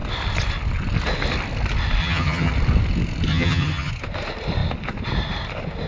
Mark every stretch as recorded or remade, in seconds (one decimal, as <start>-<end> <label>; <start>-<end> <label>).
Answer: 0.0-2.0 recorded; 2.0-2.5 remade; 2.5-3.3 recorded; 3.3-3.9 remade; 3.9-5.9 recorded